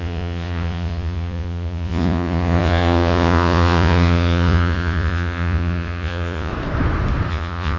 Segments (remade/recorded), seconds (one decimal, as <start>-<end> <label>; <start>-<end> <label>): 0.0-6.5 remade; 6.5-7.3 recorded; 7.3-7.8 remade